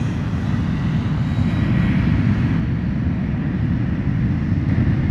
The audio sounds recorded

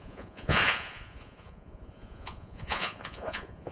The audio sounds remade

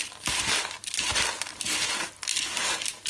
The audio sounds recorded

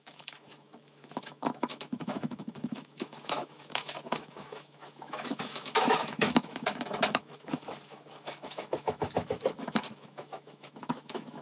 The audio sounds remade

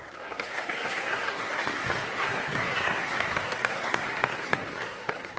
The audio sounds remade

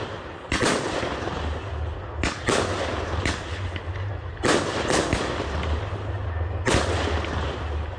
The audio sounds recorded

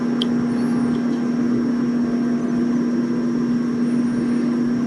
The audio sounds recorded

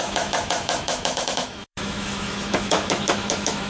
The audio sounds remade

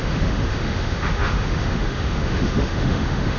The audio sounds remade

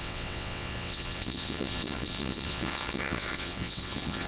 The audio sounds remade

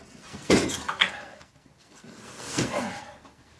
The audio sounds remade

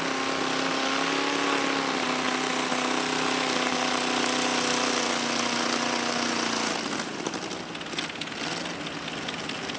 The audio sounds recorded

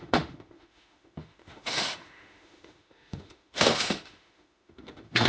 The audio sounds remade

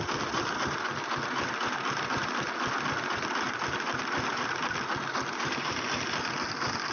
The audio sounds recorded